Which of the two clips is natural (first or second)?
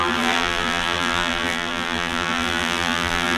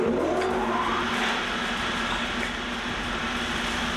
second